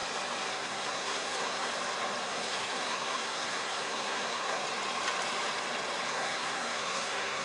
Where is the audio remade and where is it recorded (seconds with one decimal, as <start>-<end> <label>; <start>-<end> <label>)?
0.0-0.5 recorded; 0.5-1.7 remade; 1.7-2.2 recorded; 2.2-4.6 remade; 4.6-6.1 recorded; 6.1-7.4 remade